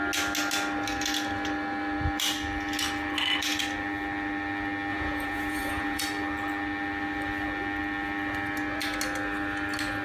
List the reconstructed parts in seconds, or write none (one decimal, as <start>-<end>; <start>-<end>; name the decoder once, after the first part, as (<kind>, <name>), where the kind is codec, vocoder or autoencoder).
4.9-6.0 (vocoder, Vocos)